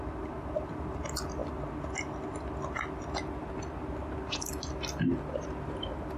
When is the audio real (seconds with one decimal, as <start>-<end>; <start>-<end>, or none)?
0.0-6.2